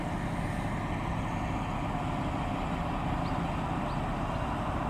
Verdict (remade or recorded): recorded